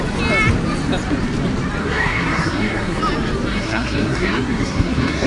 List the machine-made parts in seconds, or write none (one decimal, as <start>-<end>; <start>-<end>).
1.8-3.0; 3.5-5.3